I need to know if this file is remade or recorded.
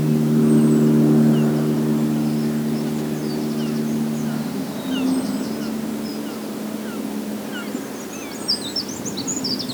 recorded